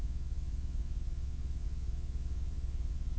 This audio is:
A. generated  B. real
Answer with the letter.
A